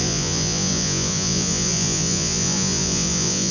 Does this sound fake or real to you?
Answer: fake